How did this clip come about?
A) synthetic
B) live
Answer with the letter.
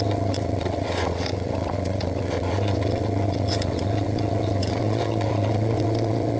A